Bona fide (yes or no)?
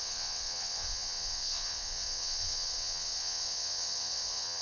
no